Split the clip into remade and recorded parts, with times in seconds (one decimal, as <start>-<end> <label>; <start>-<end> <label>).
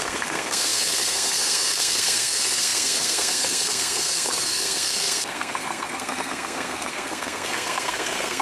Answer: 0.0-8.4 remade